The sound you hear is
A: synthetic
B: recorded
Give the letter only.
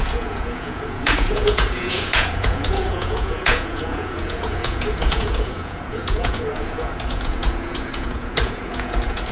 A